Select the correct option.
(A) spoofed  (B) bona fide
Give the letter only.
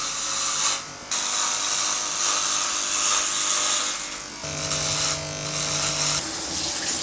B